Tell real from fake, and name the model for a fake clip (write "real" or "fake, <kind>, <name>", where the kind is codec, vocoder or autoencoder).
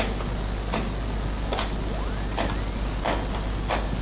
real